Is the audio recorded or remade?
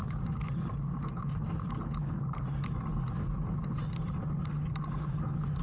recorded